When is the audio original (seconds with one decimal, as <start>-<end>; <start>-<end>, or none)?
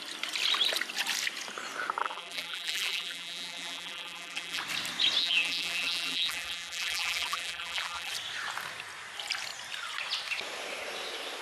0.0-2.0; 4.6-5.2; 8.1-11.4